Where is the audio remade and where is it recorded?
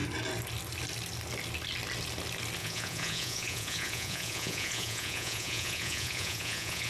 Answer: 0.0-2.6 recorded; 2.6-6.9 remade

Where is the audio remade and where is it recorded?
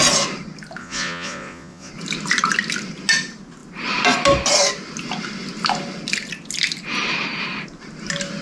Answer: 0.0-0.8 recorded; 0.8-1.9 remade; 1.9-8.4 recorded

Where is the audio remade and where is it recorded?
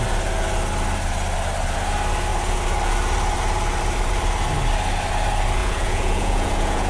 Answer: 0.0-5.6 recorded; 5.6-6.9 remade